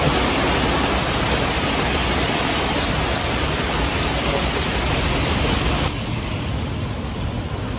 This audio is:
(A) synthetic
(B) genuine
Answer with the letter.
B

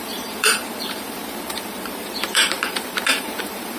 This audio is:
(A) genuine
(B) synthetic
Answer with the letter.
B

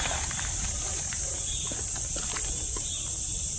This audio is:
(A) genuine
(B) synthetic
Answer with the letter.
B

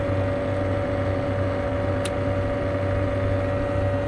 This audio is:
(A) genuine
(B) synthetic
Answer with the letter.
A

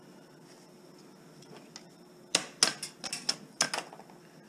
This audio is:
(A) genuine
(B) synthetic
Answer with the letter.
A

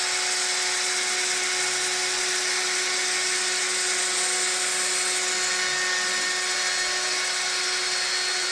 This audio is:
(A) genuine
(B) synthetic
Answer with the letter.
A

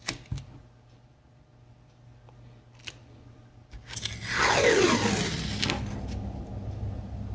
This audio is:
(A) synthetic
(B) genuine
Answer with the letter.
B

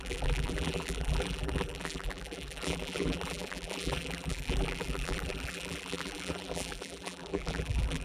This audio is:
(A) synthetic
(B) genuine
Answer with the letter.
A